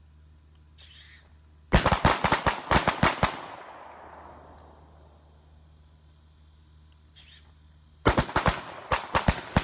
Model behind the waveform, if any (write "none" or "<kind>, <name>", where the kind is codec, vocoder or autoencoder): none